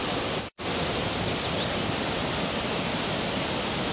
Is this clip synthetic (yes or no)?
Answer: no